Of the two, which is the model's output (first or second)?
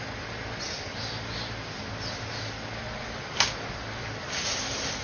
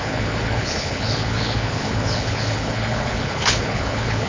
second